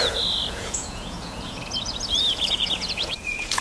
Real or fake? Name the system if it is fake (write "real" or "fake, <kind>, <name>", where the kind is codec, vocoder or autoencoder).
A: fake, vocoder, Vocos